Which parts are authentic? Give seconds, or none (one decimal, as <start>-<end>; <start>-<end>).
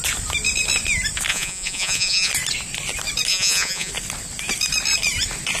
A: 0.0-1.3; 2.3-3.3; 3.9-5.6